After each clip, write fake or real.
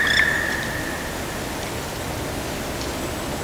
real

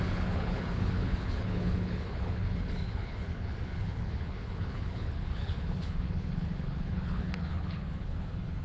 fake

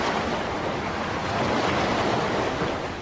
real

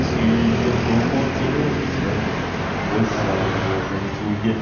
real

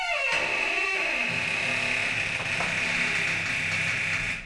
real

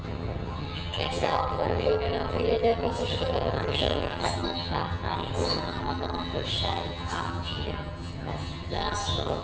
fake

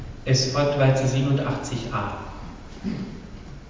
real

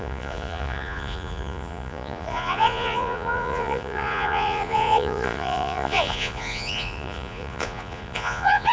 fake